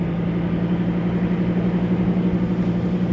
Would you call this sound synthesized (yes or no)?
no